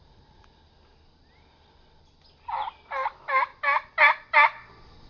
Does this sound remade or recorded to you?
recorded